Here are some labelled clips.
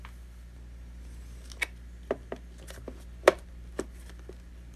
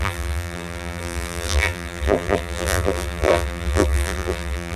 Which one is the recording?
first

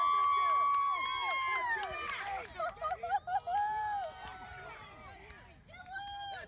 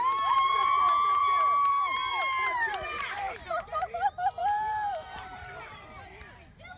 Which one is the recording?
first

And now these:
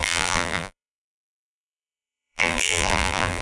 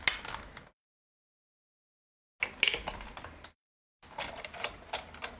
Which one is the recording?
second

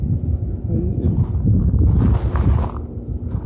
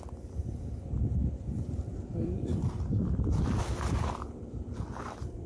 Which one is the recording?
first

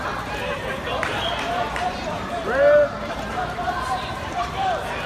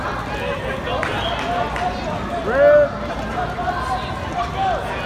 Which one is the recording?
second